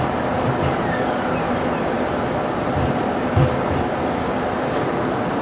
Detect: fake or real real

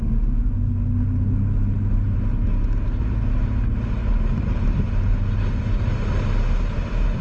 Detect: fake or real real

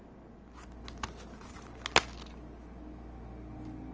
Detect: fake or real real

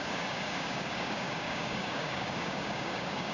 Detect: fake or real fake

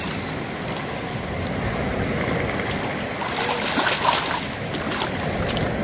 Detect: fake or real real